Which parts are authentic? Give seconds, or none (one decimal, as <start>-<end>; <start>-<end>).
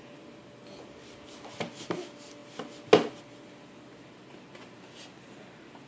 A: 0.0-5.9